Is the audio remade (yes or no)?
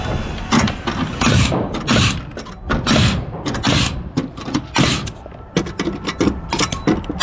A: no